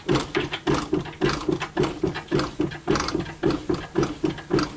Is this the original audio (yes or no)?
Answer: yes